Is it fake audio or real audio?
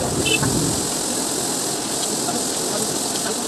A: real